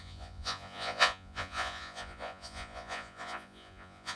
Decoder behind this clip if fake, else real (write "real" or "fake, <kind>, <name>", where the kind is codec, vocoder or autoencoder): fake, vocoder, Vocos